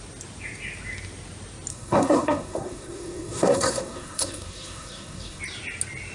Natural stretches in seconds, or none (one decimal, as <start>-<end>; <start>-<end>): 0.0-1.7; 5.4-6.1